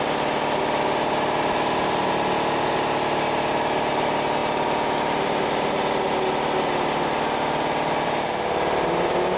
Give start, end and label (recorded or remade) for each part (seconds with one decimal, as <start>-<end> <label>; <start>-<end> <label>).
0.0-9.4 recorded